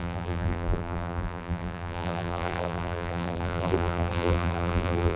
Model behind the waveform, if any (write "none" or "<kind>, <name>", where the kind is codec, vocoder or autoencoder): vocoder, BigVGAN v2